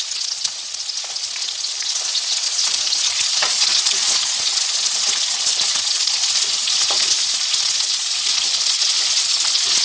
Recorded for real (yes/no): no